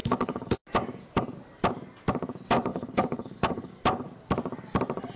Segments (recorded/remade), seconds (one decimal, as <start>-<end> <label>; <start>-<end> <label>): 0.0-0.6 remade; 0.6-2.7 recorded; 2.7-3.7 remade; 3.7-5.2 recorded